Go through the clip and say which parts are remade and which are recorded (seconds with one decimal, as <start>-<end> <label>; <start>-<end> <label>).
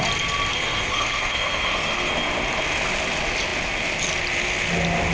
0.0-0.5 recorded; 0.5-2.1 remade; 2.1-5.1 recorded